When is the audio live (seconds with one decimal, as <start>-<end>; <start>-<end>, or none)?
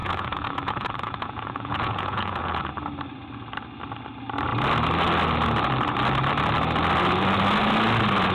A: 2.7-8.3